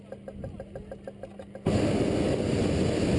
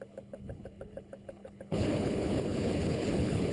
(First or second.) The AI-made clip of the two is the second